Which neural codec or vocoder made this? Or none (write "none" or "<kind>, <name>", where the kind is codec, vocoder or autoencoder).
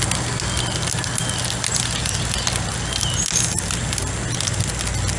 none